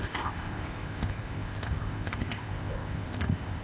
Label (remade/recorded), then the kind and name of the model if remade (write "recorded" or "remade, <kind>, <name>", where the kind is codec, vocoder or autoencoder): remade, codec, ZipCodec